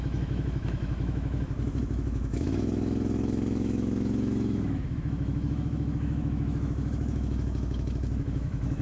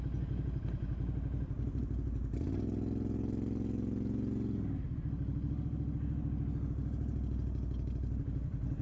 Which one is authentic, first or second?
second